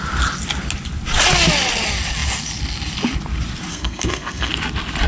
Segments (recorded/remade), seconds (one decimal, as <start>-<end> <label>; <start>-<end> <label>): 0.0-3.7 recorded; 3.7-4.5 remade; 4.5-5.1 recorded